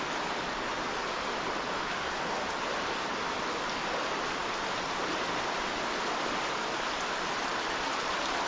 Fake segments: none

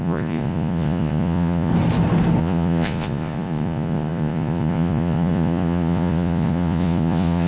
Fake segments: 0.0-1.7 (vocoder, Vocos); 2.4-7.5